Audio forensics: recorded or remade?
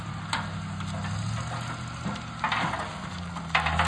recorded